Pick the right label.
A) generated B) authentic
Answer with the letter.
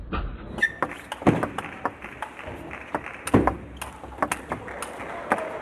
B